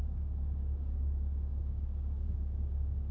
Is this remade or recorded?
remade